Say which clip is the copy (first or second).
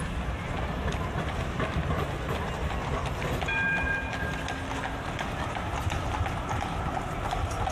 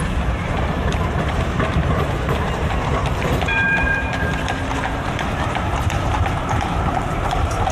second